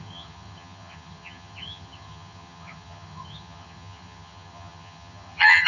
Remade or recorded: remade